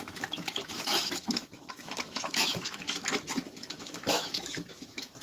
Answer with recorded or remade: remade